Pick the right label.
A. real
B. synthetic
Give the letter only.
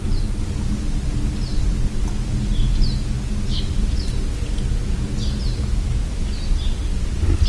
A